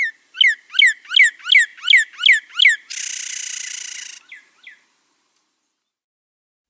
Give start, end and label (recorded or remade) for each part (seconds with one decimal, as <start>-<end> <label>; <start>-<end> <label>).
0.0-6.7 recorded